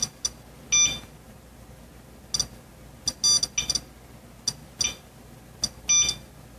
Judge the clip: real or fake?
real